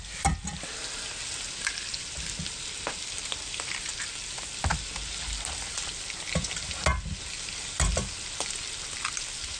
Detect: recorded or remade recorded